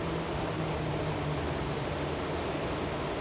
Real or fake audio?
real